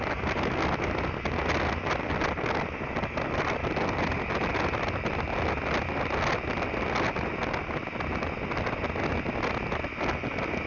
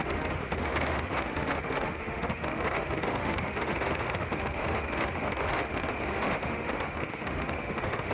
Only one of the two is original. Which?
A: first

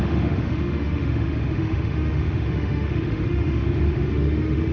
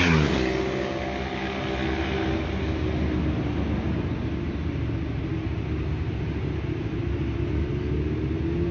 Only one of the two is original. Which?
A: second